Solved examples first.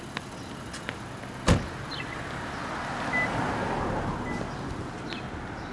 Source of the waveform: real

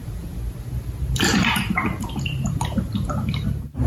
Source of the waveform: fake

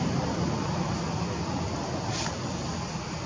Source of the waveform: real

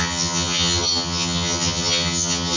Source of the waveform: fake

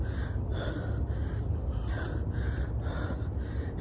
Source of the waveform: real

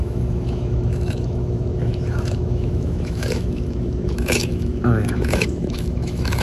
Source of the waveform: fake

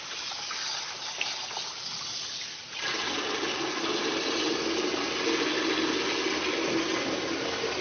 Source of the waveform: real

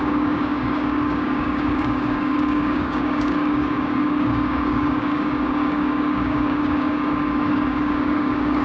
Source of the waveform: fake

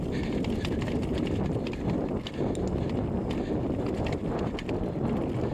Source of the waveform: real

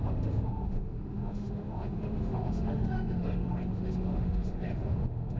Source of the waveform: fake